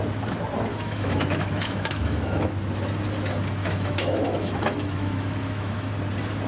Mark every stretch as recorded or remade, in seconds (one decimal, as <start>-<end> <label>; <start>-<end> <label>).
0.0-0.7 recorded; 0.7-2.5 remade; 2.5-3.6 recorded; 3.6-5.9 remade; 5.9-6.5 recorded